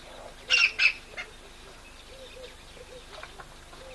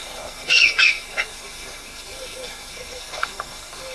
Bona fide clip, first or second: first